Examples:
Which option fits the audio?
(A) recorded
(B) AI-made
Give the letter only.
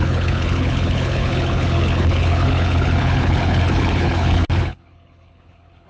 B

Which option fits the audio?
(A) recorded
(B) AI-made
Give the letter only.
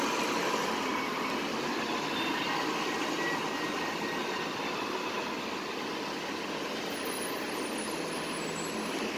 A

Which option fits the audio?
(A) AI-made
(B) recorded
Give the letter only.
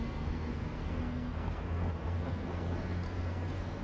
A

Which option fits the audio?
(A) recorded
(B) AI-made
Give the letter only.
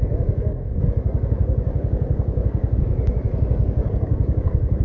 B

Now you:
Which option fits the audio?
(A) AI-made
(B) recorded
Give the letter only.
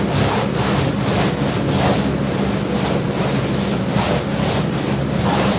B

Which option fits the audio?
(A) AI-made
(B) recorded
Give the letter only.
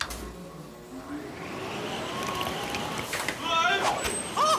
B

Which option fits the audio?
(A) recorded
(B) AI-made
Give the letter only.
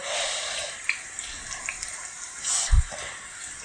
A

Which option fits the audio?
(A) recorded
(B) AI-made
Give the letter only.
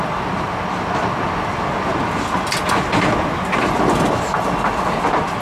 A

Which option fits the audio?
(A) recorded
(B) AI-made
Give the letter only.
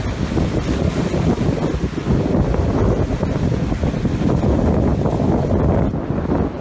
A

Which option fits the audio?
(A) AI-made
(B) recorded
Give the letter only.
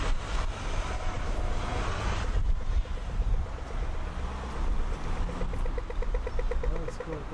B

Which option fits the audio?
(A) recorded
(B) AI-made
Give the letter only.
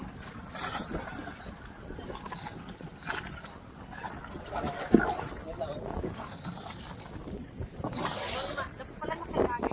A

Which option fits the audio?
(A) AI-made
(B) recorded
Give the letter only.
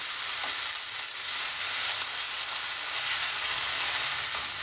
B